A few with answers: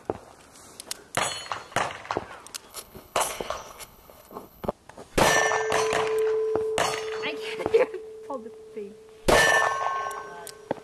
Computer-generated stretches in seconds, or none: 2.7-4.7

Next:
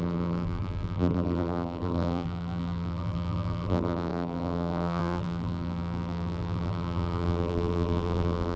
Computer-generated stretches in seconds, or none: 0.0-8.6

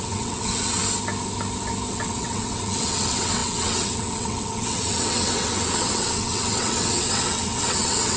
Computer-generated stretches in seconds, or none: 0.0-0.8; 1.9-8.2

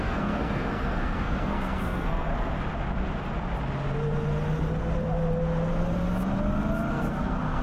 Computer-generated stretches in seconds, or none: 0.0-2.3; 6.9-7.6

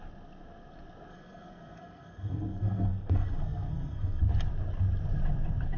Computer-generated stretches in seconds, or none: 1.1-4.2